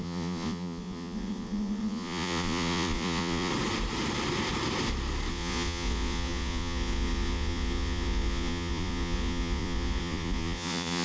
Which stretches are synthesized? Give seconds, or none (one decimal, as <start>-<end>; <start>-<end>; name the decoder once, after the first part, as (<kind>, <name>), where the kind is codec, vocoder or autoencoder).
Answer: 0.0-3.5 (vocoder, Vocos); 5.3-11.0